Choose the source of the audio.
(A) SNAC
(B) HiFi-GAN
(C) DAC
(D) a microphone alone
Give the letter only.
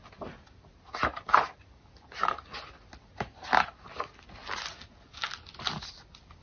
D